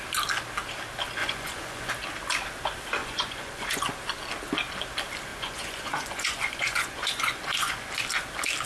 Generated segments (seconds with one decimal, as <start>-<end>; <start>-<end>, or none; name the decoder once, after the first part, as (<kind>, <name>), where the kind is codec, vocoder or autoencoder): 1.2-1.9 (vocoder, Vocos); 3.0-3.8; 5.3-7.9